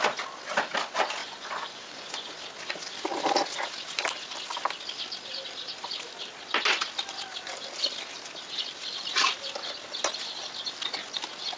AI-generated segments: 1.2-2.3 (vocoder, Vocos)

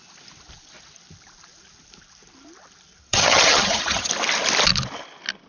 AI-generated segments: 3.0-4.1 (vocoder, HiFi-GAN)